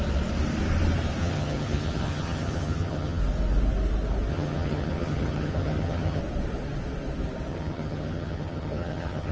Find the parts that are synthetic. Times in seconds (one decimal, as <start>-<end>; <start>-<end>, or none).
1.2-3.2; 4.3-6.2; 7.5-9.3